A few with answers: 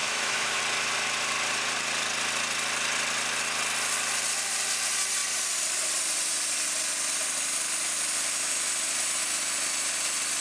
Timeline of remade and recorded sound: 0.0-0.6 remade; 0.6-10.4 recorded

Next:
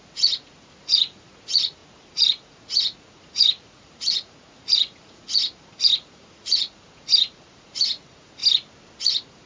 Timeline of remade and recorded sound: 0.0-8.4 remade; 8.4-9.0 recorded; 9.0-9.5 remade